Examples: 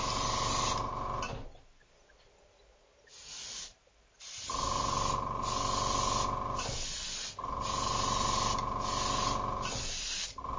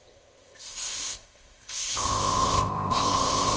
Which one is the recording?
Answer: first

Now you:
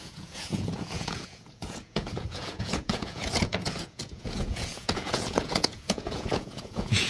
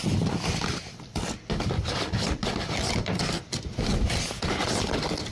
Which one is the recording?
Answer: second